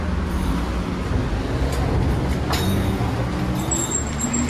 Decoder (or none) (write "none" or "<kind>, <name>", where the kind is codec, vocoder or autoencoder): none